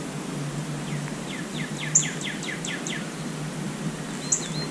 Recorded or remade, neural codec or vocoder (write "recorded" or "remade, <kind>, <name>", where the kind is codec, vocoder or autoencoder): recorded